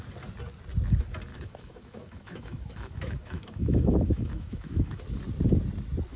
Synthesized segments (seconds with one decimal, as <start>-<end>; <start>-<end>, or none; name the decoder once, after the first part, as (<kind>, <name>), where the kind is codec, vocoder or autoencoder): 1.3-5.0 (autoencoder, DAC-VAE)